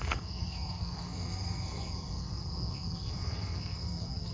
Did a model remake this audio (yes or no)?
yes